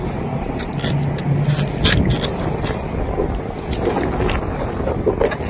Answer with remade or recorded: recorded